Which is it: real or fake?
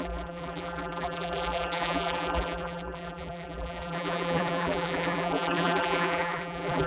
fake